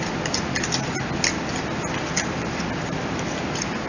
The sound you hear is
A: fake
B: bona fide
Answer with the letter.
B